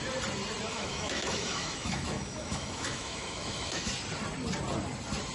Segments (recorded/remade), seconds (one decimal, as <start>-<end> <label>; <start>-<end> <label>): 0.0-0.7 recorded; 0.7-3.9 remade; 3.9-5.3 recorded